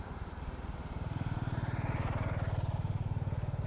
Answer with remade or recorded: remade